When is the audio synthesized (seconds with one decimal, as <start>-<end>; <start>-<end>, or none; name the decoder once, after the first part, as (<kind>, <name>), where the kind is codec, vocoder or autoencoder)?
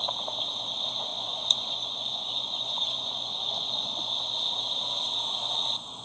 1.1-4.2 (vocoder, Vocos)